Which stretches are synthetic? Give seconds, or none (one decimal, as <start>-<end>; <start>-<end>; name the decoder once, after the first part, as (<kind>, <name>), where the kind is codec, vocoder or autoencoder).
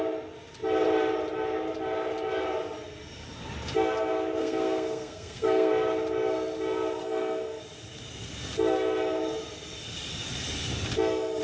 4.4-5.7 (codec, SNAC); 7.0-7.6